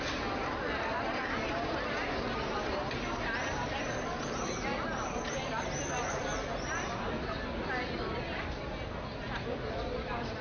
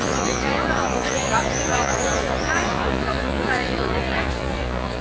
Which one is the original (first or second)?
first